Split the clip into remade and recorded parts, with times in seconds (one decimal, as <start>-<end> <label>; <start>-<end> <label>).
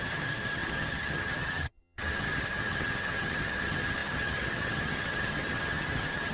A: 0.0-6.3 remade